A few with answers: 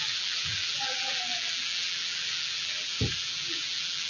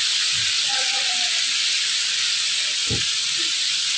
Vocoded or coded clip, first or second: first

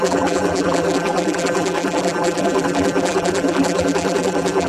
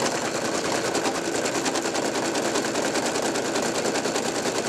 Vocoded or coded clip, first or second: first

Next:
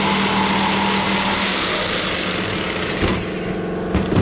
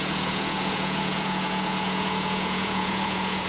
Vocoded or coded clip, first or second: second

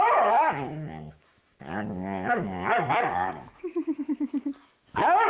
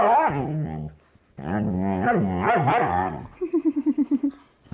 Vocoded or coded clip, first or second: first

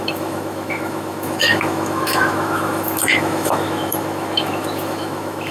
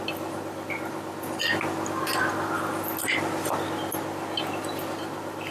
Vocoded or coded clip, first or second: first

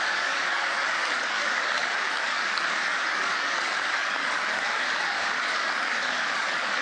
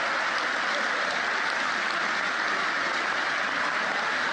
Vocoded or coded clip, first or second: first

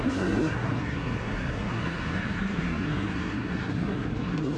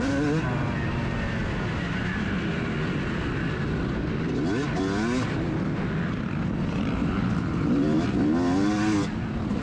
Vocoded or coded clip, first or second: first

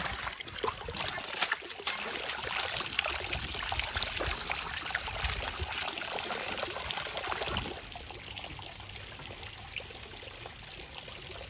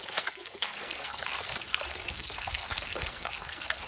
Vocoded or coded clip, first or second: second